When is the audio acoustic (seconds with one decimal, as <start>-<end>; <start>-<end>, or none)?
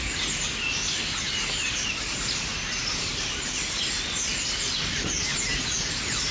0.0-2.8; 3.6-6.3